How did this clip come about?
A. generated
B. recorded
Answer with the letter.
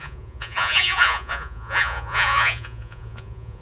A